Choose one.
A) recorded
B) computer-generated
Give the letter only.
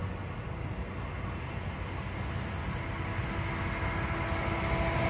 A